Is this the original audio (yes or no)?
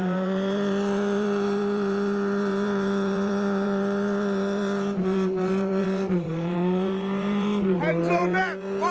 no